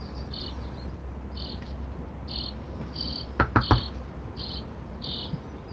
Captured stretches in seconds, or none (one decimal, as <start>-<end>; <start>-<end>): 0.0-5.7